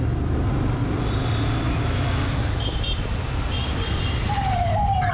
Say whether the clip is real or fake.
fake